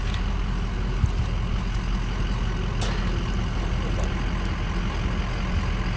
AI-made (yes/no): no